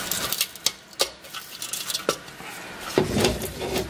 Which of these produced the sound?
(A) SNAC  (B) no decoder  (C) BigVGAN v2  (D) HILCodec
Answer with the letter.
B